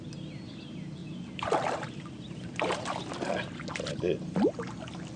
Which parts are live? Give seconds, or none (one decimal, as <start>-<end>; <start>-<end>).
0.0-5.2